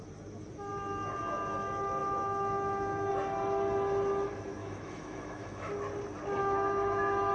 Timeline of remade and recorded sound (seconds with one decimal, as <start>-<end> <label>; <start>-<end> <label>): 0.0-2.0 recorded; 2.0-3.1 remade; 3.1-4.6 recorded; 4.6-5.7 remade; 5.7-6.4 recorded; 6.4-7.3 remade